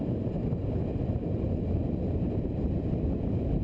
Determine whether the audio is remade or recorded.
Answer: recorded